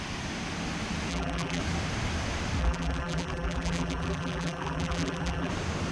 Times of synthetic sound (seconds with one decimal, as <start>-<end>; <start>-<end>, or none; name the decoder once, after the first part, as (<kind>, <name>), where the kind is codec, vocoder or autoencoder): 1.1-1.6 (vocoder, BigVGAN v2); 2.6-5.5